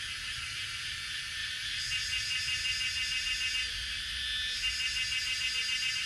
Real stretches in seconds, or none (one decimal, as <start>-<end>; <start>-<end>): 0.0-6.1